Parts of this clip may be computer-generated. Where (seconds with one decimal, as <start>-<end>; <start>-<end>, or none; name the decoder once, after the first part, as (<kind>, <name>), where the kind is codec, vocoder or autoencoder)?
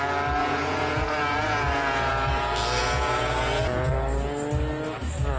0.4-2.1 (vocoder, Vocos); 2.8-3.9